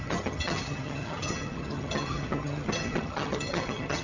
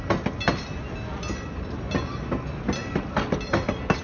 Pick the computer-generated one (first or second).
first